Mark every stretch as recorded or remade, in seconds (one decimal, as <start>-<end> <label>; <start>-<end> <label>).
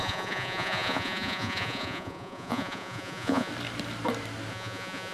0.0-3.5 remade; 3.5-4.5 recorded; 4.5-5.1 remade